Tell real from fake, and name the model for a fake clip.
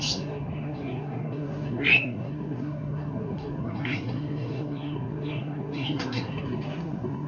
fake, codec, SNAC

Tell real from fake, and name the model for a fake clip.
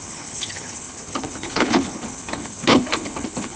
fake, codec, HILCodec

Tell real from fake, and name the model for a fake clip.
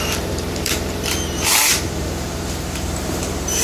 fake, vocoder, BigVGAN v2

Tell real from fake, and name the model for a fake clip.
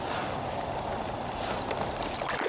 real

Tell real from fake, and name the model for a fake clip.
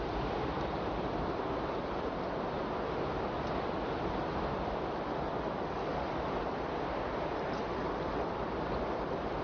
fake, vocoder, BigVGAN v2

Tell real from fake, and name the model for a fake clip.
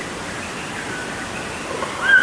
fake, vocoder, BigVGAN v2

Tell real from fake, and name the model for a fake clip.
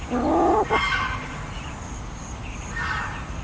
real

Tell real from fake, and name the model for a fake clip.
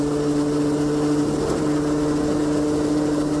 real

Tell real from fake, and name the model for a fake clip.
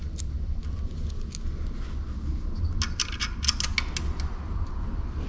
real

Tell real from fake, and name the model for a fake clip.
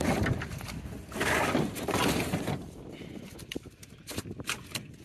real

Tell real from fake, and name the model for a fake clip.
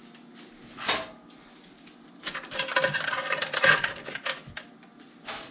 real